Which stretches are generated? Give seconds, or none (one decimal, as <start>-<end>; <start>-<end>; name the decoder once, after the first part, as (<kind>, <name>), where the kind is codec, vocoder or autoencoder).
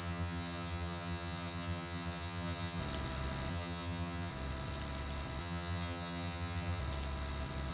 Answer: 0.0-2.8 (vocoder, HiFi-GAN); 3.5-4.3; 5.4-6.8